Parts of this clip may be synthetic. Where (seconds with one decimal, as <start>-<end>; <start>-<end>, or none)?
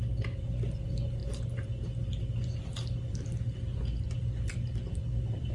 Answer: none